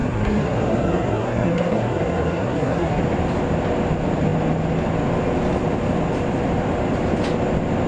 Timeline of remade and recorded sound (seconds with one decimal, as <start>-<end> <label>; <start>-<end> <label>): 0.0-3.0 remade; 3.0-7.9 recorded